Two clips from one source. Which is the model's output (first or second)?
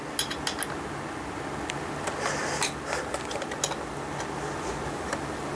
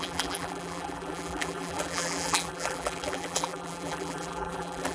second